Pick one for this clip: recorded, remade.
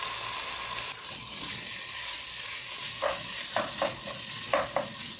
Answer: recorded